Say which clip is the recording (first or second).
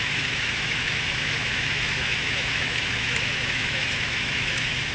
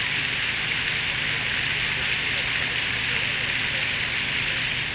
second